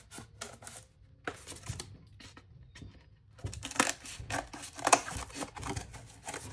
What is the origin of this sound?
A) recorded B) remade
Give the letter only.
A